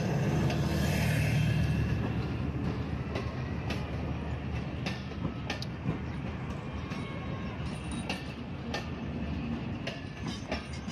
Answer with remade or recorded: recorded